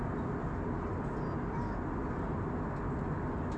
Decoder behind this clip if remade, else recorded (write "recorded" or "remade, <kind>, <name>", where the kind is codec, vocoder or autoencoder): recorded